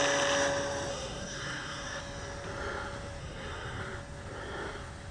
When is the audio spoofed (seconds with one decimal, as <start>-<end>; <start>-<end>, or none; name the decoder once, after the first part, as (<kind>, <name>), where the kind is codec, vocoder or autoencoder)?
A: 0.9-2.0 (codec, SNAC); 3.2-3.8